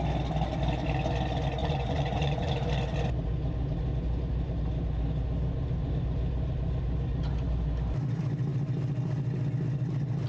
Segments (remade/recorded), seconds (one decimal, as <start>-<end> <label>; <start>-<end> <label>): 0.0-1.6 recorded; 1.6-2.5 remade; 2.5-10.3 recorded